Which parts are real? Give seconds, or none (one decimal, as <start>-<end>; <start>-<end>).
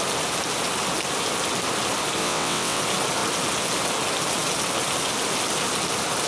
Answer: 0.0-2.2; 2.8-6.3